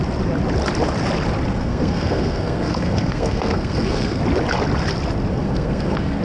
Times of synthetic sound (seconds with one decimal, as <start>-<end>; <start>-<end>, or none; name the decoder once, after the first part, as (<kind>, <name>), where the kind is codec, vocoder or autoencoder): 1.5-4.2 (codec, SNAC); 5.3-6.2